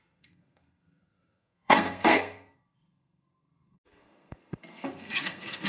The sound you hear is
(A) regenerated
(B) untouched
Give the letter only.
A